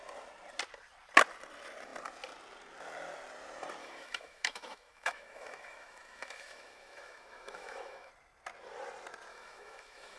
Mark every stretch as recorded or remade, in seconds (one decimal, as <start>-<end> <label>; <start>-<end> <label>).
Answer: 0.0-3.8 recorded; 3.8-8.1 remade; 8.1-9.3 recorded; 9.3-10.2 remade